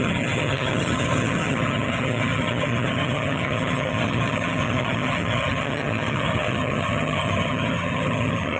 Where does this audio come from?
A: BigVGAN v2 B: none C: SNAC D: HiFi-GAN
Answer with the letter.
D